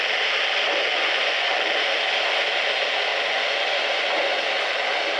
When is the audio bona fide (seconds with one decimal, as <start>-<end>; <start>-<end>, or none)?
0.0-0.9; 1.5-3.1; 4.3-5.2